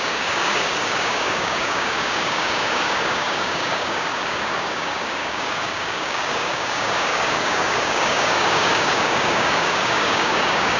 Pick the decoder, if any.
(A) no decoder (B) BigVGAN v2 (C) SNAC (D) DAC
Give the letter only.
D